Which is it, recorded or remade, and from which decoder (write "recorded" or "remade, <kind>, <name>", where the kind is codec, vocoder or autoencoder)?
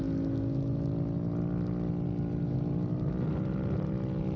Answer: recorded